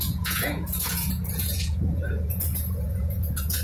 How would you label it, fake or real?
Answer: fake